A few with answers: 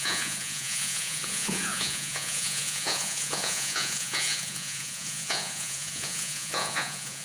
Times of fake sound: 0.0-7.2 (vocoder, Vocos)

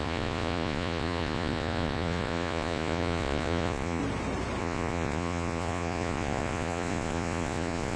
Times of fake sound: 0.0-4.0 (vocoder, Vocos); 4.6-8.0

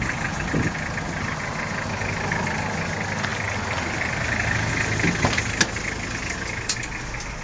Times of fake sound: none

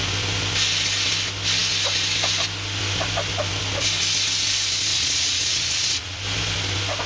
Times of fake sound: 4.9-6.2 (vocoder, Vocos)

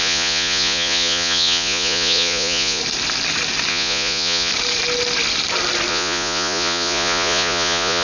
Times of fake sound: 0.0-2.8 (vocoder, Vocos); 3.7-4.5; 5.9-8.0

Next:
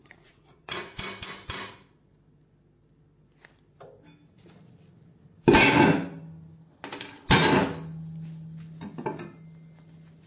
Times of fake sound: 0.0-1.0 (vocoder, Vocos)

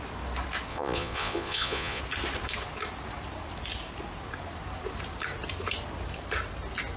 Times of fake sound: 0.7-2.0 (vocoder, Vocos)

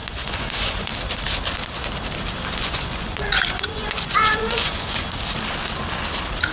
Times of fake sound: 0.0-0.9 (vocoder, Vocos); 2.6-5.1